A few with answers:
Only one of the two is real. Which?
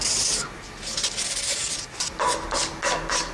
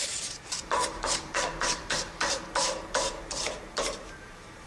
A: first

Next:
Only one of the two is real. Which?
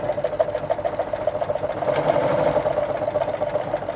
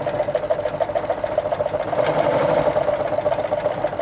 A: first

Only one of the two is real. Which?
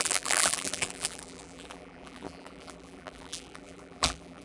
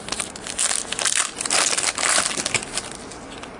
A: second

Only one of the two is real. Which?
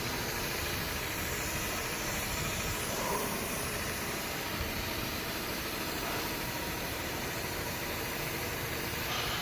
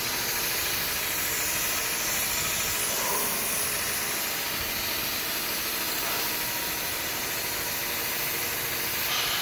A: second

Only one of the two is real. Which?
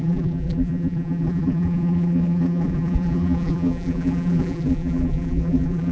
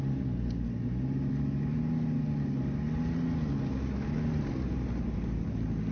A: second